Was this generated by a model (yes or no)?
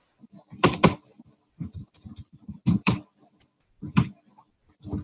yes